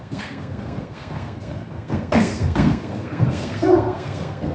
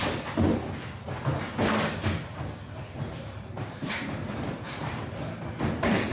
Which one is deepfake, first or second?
first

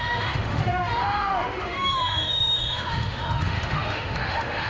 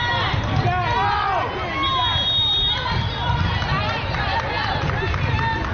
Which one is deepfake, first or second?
first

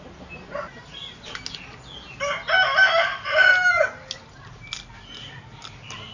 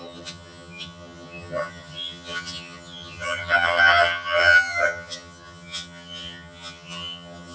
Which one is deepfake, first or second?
second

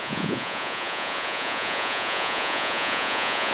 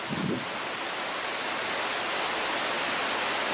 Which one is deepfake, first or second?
first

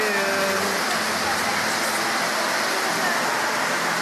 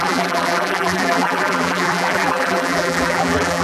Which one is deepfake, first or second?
second